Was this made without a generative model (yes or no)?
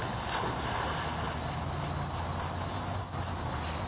yes